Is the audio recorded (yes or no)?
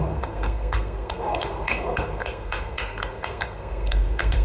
no